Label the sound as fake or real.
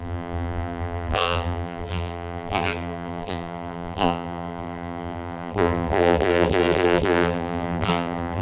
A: fake